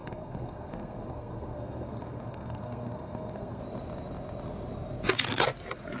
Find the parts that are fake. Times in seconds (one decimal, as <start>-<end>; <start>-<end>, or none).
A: 0.0-3.6